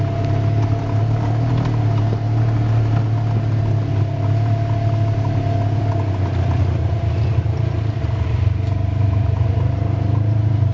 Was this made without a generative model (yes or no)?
yes